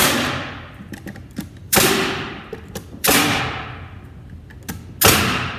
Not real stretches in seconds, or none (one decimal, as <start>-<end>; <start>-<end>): 0.0-3.4